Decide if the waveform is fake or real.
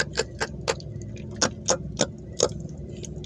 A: real